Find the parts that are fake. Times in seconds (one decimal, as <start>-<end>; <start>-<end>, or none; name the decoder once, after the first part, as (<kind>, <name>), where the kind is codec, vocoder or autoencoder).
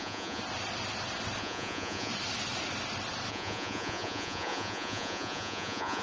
0.0-0.4 (vocoder, Vocos); 1.4-2.1; 3.3-6.0